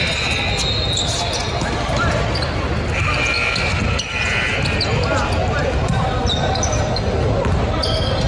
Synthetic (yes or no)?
no